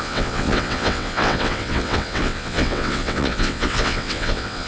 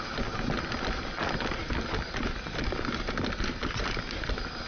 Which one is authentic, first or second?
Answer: second